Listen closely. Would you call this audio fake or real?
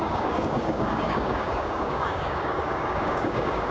fake